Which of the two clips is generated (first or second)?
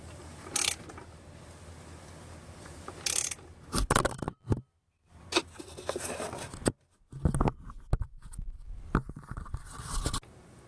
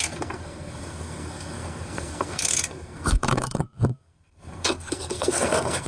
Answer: second